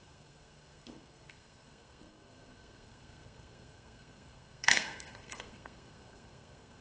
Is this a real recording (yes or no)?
no